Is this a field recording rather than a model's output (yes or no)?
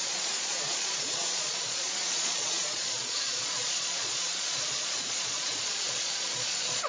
no